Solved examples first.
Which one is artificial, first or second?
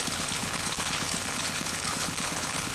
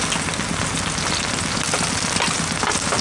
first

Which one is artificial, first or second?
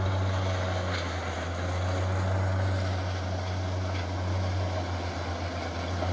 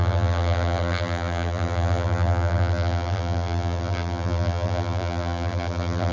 second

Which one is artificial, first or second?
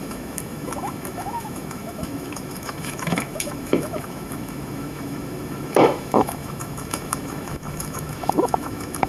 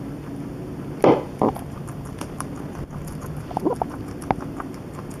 first